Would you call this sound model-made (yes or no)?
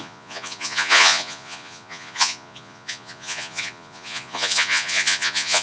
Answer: yes